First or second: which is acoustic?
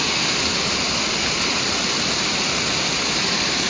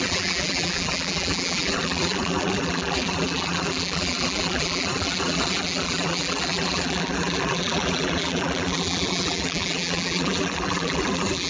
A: first